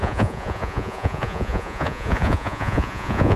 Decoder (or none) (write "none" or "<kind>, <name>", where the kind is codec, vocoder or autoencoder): vocoder, Vocos